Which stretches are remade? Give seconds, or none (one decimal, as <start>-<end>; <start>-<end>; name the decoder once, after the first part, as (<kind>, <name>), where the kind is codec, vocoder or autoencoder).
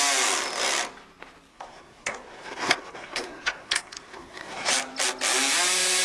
1.5-4.7 (codec, SNAC)